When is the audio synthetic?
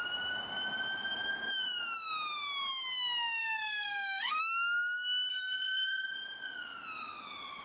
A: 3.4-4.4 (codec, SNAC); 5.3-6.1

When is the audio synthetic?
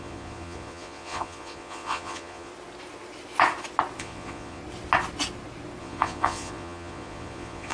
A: 0.0-2.5 (vocoder, Vocos); 4.0-4.6; 5.8-7.7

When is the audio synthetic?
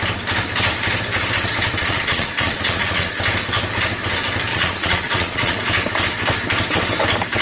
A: 1.8-3.1 (vocoder, Vocos); 4.5-5.6